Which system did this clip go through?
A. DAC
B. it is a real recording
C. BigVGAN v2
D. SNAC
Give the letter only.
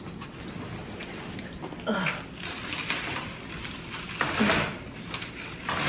B